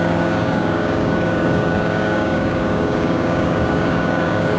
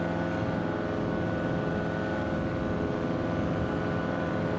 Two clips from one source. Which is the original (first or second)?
second